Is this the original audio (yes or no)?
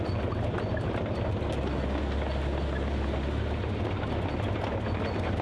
yes